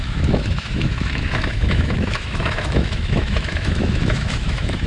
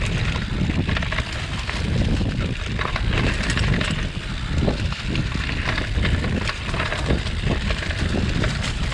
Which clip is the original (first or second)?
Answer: second